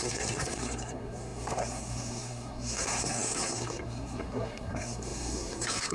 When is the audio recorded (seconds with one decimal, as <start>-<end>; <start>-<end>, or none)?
none